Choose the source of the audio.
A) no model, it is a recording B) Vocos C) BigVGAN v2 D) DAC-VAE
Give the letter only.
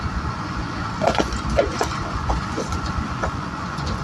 B